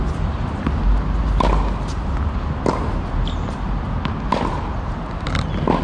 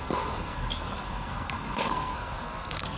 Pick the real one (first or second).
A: first